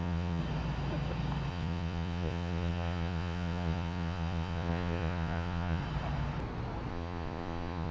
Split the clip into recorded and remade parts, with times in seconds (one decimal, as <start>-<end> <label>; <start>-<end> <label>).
0.0-0.4 remade; 0.4-1.5 recorded; 1.5-5.8 remade; 5.8-6.9 recorded; 6.9-7.9 remade